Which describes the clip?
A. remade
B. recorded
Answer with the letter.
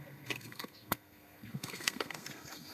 A